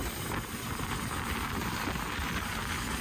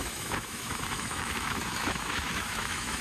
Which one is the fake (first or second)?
second